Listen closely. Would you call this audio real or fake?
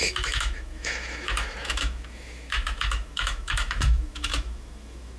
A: fake